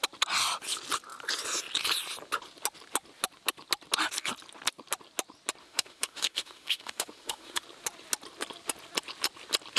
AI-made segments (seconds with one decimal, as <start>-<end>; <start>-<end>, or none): 5.6-7.6